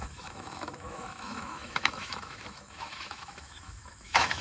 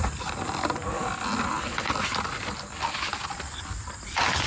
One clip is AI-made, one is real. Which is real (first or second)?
second